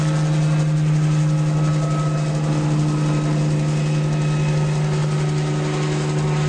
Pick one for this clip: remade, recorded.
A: recorded